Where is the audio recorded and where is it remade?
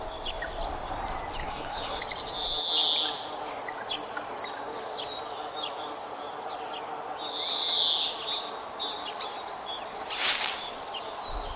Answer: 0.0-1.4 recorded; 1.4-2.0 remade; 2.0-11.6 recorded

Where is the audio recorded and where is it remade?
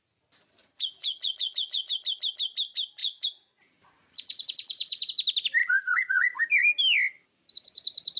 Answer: 0.0-0.6 recorded; 0.6-1.9 remade; 1.9-3.0 recorded; 3.0-5.1 remade; 5.1-5.6 recorded; 5.6-6.4 remade; 6.4-8.2 recorded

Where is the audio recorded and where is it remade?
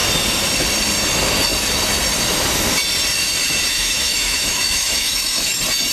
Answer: 0.0-3.7 recorded; 3.7-5.5 remade; 5.5-5.9 recorded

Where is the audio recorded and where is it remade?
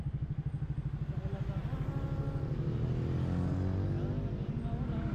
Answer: 0.0-5.1 recorded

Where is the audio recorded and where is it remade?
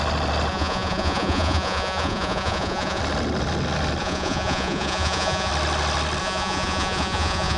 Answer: 0.0-0.5 recorded; 0.5-3.0 remade; 3.0-4.0 recorded; 4.0-5.5 remade; 5.5-6.2 recorded; 6.2-7.6 remade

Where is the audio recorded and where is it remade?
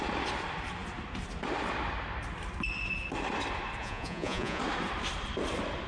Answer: 0.0-3.8 recorded; 3.8-4.6 remade; 4.6-5.9 recorded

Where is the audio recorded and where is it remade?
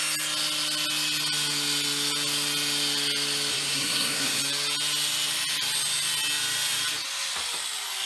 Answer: 0.0-3.5 recorded; 3.5-4.4 remade; 4.4-8.1 recorded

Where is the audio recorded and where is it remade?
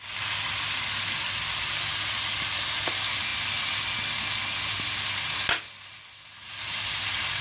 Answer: 0.0-7.4 recorded